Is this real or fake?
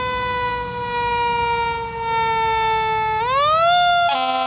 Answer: real